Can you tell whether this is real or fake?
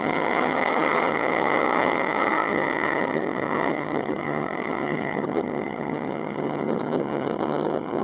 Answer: fake